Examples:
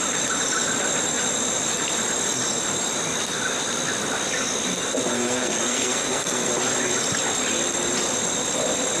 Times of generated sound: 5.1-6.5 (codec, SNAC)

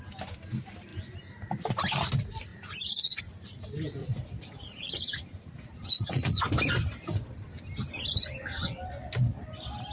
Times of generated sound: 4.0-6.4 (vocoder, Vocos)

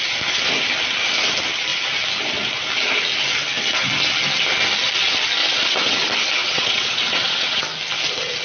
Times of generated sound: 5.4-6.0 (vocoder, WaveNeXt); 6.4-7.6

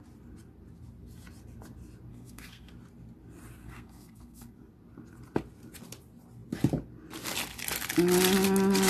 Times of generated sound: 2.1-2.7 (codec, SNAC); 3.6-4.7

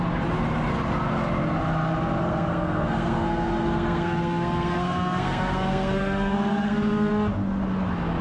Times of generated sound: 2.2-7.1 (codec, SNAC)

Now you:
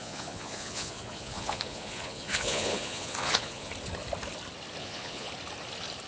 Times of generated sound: 0.0-3.7 (vocoder, Vocos); 4.8-5.3

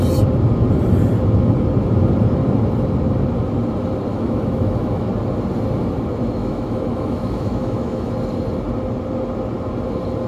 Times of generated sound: 4.1-5.1 (autoencoder, DAC-VAE); 6.4-8.1